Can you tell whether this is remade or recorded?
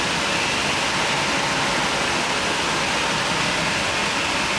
recorded